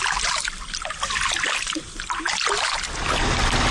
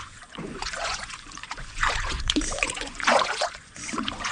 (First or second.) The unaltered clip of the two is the first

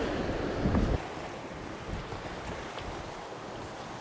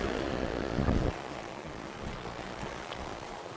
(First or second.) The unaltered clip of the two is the first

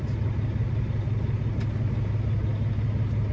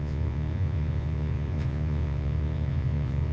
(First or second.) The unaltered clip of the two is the first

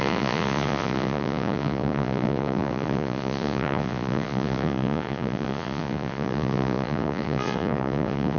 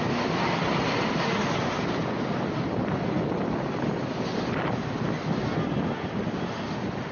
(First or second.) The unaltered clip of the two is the second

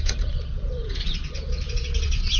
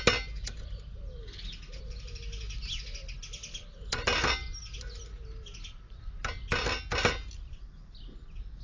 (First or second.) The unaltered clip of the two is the second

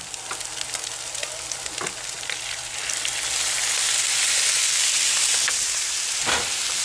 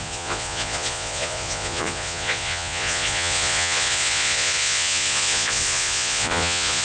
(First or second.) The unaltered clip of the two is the first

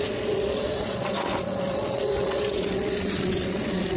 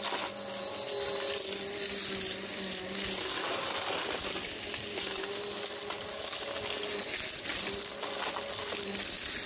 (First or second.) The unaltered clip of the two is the second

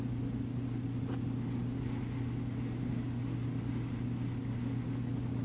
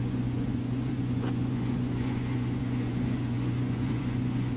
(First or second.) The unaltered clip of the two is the first